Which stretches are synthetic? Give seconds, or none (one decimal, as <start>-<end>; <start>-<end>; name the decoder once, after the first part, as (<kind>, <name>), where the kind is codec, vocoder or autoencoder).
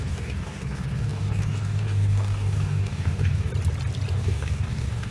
0.0-3.5 (codec, DAC); 4.1-5.1